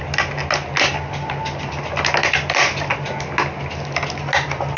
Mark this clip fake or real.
real